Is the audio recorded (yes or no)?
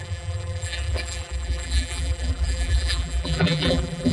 no